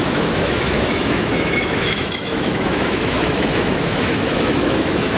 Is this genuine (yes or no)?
no